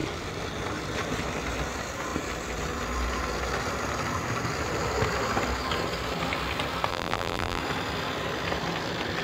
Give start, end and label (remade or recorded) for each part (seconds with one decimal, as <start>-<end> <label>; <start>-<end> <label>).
0.0-6.9 recorded; 6.9-7.6 remade; 7.6-9.2 recorded